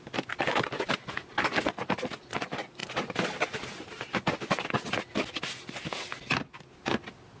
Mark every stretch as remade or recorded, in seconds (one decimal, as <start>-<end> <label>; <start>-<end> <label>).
0.0-7.4 recorded

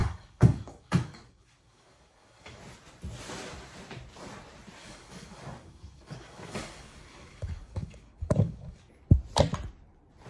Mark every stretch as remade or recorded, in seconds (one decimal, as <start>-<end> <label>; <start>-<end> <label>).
0.0-2.6 remade; 2.6-4.8 recorded; 4.8-8.9 remade; 8.9-10.3 recorded

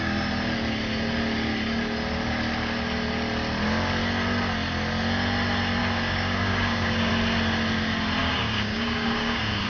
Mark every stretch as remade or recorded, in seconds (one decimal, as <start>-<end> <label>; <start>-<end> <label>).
0.0-5.8 recorded; 5.8-7.1 remade; 7.1-8.2 recorded; 8.2-9.7 remade

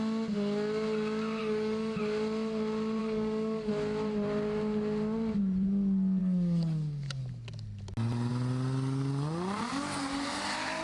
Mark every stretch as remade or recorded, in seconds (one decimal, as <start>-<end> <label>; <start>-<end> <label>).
0.0-1.4 recorded; 1.4-2.0 remade; 2.0-3.0 recorded; 3.0-3.7 remade; 3.7-6.2 recorded; 6.2-7.2 remade; 7.2-10.8 recorded